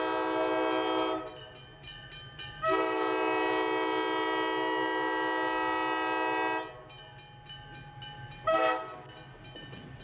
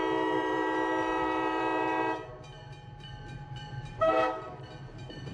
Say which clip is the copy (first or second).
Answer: second